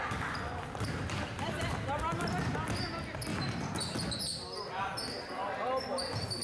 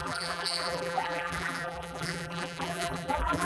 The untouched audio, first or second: first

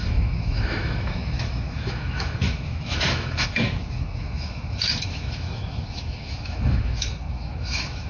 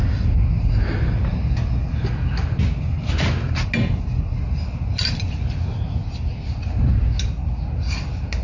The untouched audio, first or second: second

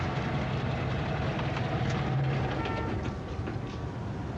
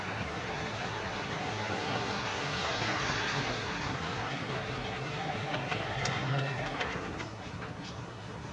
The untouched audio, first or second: first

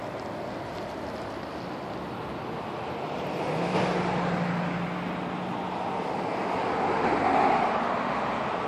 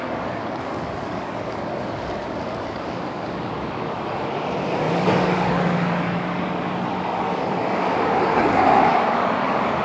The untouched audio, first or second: first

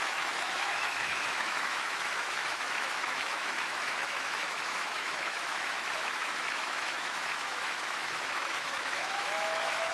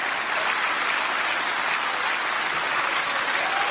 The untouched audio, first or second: second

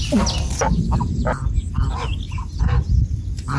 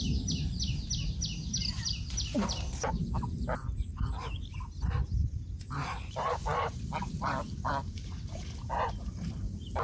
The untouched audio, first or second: first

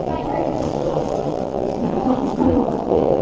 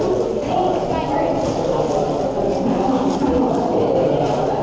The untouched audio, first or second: second